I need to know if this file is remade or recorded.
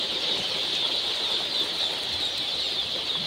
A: recorded